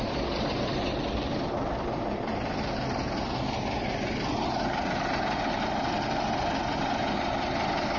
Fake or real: real